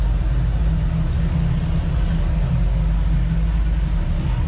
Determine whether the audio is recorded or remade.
recorded